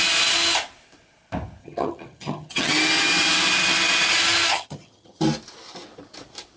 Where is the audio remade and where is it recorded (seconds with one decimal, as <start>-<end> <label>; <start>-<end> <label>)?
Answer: 0.0-1.6 recorded; 1.6-2.7 remade; 2.7-4.5 recorded; 4.5-5.2 remade; 5.2-6.6 recorded